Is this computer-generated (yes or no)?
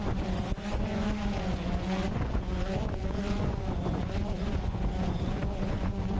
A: yes